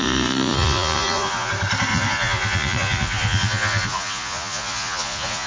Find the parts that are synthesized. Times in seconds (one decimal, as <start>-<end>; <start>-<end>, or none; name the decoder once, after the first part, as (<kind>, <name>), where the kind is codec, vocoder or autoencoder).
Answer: 0.0-1.5 (vocoder, Vocos); 1.9-5.5